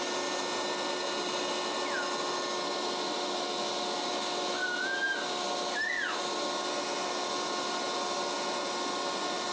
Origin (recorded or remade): recorded